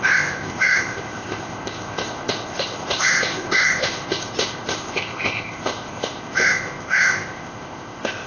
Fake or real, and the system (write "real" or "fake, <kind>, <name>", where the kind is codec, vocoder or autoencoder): fake, codec, ZipCodec